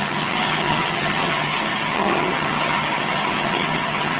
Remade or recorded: remade